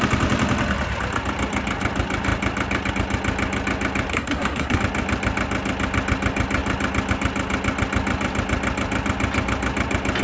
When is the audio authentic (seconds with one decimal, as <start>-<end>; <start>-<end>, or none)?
0.0-4.1; 4.8-10.2